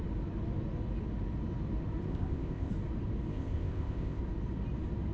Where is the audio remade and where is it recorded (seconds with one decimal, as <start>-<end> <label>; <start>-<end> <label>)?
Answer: 0.0-2.1 recorded; 2.1-2.7 remade; 2.7-3.3 recorded; 3.3-4.2 remade; 4.2-5.1 recorded